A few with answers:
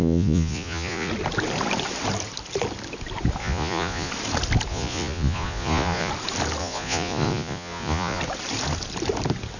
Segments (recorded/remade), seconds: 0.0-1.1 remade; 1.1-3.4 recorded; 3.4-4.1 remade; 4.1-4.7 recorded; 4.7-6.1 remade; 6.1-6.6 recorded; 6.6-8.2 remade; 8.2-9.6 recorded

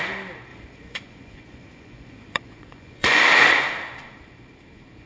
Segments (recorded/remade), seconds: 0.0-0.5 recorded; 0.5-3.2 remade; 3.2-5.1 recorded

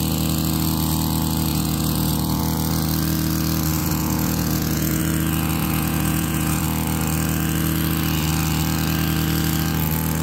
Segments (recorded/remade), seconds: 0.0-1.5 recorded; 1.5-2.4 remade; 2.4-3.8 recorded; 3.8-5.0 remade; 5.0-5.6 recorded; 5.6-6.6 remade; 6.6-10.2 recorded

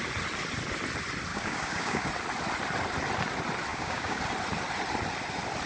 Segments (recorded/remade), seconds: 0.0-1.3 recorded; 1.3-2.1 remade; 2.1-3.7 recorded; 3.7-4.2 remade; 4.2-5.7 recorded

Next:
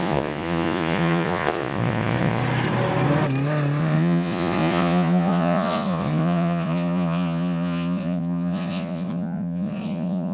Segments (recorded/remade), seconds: 0.0-2.4 remade; 2.4-3.8 recorded; 3.8-10.3 remade

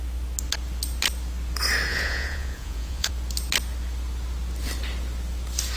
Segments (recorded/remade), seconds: 0.0-1.9 recorded; 1.9-3.1 remade; 3.1-5.8 recorded

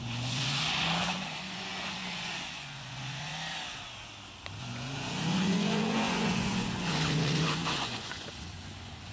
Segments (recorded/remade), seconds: 0.0-3.3 remade; 3.3-4.6 recorded; 4.6-9.1 remade

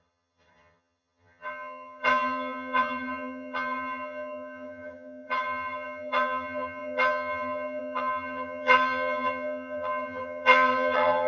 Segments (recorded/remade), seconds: 0.0-11.3 remade